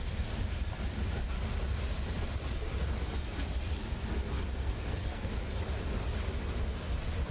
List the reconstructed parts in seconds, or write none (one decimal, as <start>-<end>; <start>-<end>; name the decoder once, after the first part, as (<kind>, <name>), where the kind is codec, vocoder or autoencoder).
4.5-5.3 (codec, SNAC)